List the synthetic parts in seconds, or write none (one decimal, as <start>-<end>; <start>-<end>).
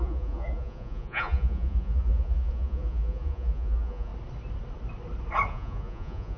0.0-4.1; 5.5-6.4